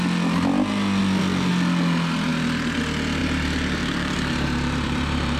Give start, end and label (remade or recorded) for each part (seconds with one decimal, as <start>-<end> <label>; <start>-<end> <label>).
0.0-3.2 recorded; 3.2-5.4 remade